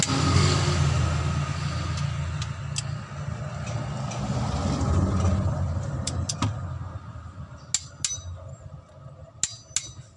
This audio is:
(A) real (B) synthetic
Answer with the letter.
A